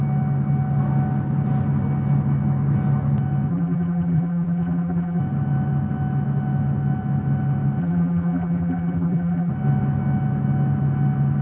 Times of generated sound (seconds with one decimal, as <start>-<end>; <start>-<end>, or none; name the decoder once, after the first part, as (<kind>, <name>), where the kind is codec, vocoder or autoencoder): 3.5-5.2 (vocoder, BigVGAN v2); 7.8-9.5